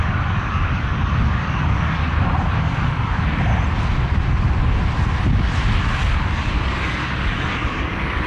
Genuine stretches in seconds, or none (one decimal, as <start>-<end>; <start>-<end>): 2.0-2.5; 3.5-5.8